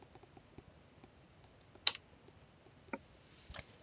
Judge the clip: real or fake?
real